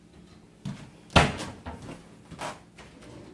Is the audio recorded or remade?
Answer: recorded